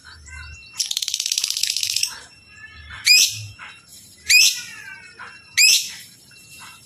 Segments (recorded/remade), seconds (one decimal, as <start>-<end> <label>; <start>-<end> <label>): 0.0-6.9 remade